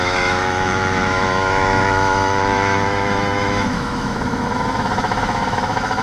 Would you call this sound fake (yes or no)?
yes